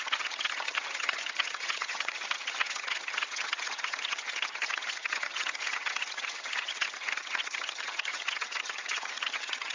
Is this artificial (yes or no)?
yes